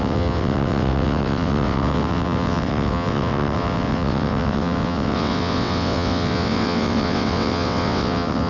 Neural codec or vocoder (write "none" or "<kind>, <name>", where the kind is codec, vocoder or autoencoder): vocoder, WaveNeXt